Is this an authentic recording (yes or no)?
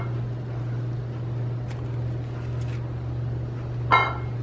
yes